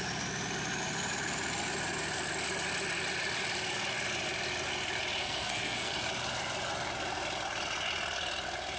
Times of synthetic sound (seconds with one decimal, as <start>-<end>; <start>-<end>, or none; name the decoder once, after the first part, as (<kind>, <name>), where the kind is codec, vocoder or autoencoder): 5.2-5.9 (codec, SNAC)